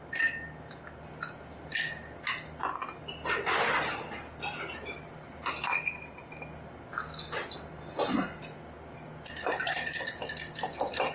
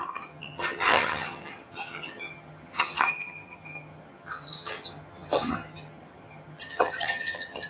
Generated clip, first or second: second